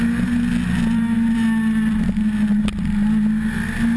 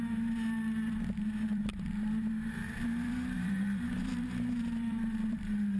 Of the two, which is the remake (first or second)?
second